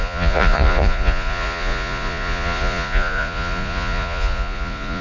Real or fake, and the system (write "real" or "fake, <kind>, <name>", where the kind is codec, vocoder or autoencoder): fake, vocoder, Vocos